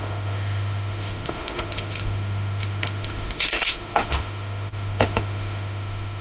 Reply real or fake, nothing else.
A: fake